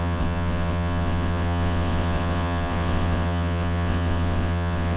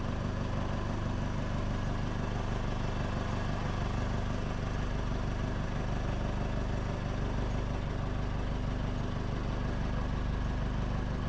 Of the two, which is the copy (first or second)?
first